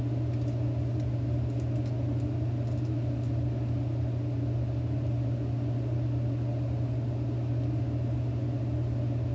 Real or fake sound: real